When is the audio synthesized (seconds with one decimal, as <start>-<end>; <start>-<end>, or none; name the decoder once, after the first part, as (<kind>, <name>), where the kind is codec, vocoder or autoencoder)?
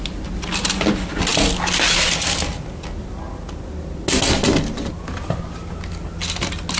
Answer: none